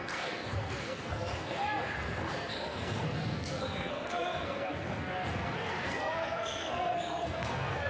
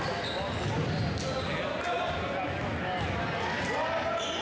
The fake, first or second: first